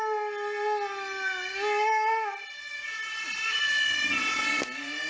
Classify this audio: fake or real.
real